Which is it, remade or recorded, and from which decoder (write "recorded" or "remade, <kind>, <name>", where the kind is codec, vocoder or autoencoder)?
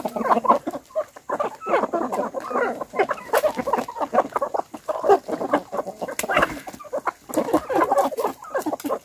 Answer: recorded